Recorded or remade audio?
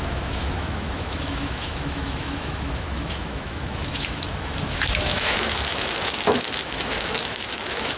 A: remade